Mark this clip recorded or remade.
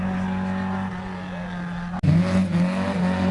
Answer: recorded